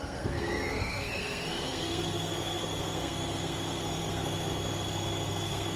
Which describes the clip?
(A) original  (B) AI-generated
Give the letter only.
B